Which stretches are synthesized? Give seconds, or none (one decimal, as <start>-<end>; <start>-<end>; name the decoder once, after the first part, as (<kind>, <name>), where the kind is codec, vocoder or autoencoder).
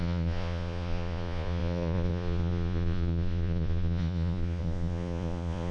0.0-5.7 (vocoder, Vocos)